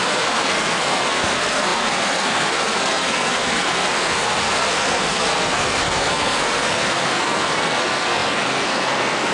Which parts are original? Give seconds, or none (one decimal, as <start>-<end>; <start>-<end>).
none